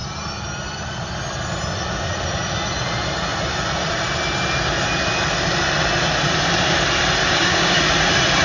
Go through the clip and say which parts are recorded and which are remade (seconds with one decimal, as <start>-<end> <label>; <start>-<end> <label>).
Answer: 0.0-7.2 recorded; 7.2-7.8 remade; 7.8-8.4 recorded